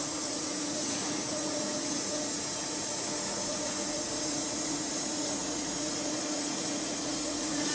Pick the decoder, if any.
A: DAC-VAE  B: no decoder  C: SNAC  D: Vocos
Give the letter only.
D